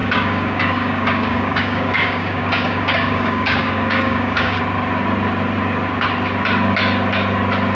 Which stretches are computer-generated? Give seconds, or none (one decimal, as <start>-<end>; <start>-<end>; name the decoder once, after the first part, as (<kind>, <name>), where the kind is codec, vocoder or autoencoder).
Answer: 0.0-4.6 (codec, DAC)